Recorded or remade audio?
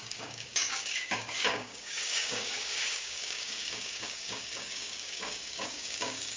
remade